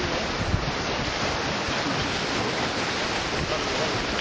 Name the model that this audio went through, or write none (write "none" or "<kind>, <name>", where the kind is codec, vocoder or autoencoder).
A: none